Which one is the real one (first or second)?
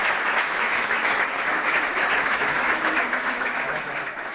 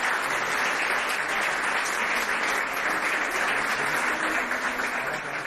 second